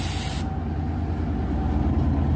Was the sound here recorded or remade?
recorded